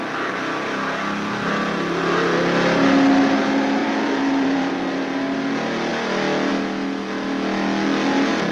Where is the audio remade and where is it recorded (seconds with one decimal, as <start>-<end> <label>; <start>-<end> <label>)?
0.0-3.8 recorded; 3.8-4.7 remade; 4.7-8.5 recorded